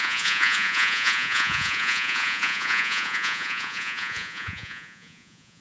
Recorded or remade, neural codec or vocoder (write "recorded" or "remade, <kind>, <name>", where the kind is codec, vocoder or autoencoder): remade, vocoder, Vocos